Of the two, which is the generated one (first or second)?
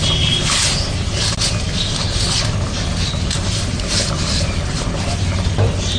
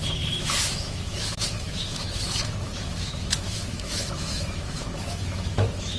second